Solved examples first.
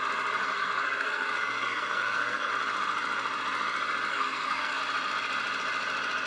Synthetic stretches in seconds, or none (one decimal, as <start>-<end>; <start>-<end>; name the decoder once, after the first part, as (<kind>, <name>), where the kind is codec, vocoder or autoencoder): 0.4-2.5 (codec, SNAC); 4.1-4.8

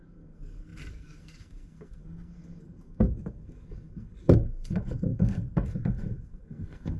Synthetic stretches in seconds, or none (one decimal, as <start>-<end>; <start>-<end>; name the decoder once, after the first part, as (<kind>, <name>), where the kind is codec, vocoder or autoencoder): 0.0-7.0 (codec, SNAC)

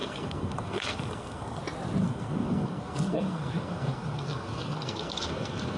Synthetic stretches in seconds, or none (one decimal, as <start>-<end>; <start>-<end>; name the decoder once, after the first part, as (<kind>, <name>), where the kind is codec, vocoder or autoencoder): 0.0-1.6 (codec, SNAC); 2.0-5.8